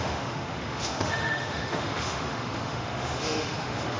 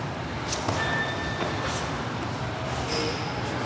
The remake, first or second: first